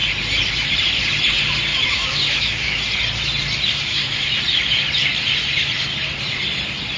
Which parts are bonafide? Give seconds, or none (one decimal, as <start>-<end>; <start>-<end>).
0.0-1.7; 2.8-3.9; 4.4-7.0